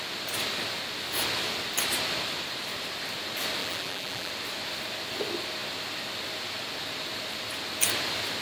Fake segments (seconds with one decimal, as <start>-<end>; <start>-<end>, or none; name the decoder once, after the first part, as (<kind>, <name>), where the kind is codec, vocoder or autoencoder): 3.6-4.3 (vocoder, BigVGAN v2)